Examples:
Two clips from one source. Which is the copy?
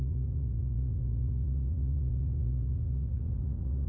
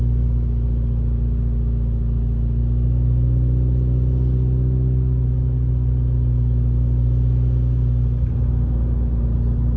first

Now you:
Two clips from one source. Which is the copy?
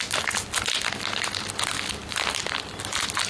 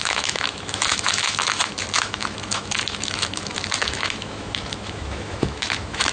second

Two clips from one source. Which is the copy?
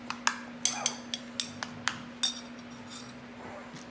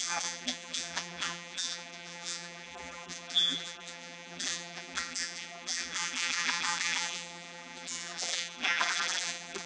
second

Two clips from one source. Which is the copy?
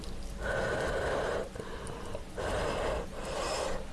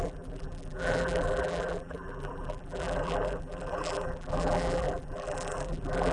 second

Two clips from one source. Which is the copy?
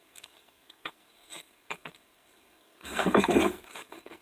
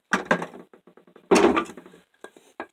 first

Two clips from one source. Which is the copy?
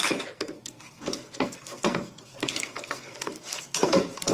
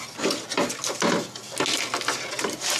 first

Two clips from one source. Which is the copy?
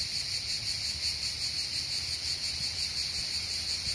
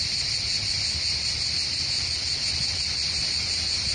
second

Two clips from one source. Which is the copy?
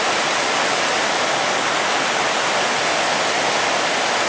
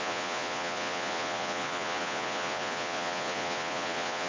second